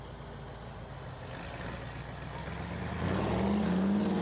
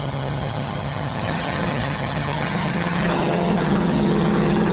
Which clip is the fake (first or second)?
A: second